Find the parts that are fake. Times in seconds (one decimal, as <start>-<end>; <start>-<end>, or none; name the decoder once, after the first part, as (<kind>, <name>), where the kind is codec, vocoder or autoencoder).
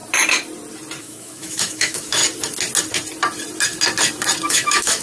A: 1.0-2.2 (autoencoder, DAC-VAE); 4.5-5.0